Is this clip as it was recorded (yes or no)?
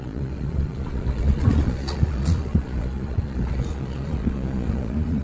no